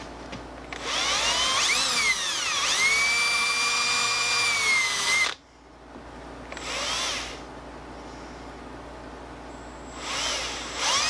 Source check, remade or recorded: recorded